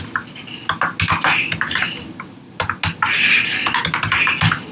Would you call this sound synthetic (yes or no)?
no